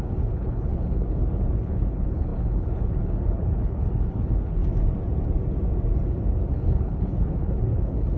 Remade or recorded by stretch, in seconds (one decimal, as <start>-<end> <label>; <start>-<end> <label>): 0.0-4.6 remade; 4.6-6.5 recorded; 6.5-8.2 remade